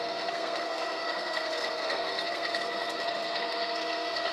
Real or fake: fake